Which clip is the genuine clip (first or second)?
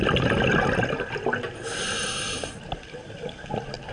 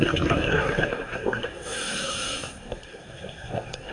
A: first